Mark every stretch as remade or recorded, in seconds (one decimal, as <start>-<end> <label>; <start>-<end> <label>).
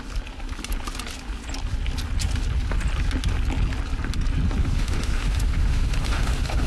0.0-4.6 recorded; 4.6-6.7 remade